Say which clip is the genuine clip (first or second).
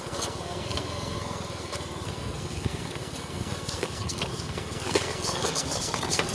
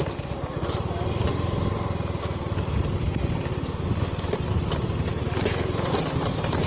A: second